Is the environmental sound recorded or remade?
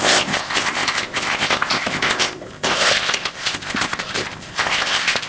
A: remade